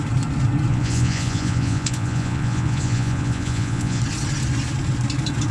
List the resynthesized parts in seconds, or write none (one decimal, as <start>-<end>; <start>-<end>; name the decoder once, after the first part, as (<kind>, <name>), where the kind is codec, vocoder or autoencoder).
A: 0.7-4.0 (vocoder, Vocos)